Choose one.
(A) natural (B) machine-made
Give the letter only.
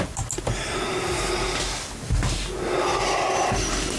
A